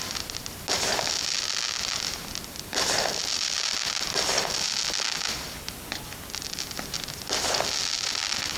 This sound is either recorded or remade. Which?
recorded